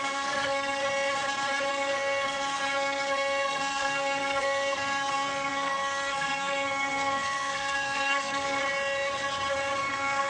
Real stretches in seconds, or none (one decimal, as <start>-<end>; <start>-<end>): 0.8-1.7; 8.6-9.9